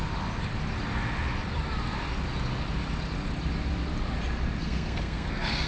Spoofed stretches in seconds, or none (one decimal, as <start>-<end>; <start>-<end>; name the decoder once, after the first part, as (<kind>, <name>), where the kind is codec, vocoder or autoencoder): 4.6-5.7 (codec, SNAC)